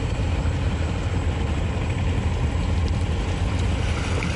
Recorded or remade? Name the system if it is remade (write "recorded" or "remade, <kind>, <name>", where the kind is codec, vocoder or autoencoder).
recorded